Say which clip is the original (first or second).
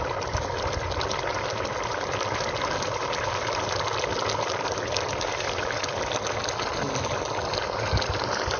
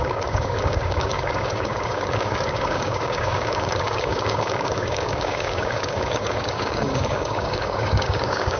first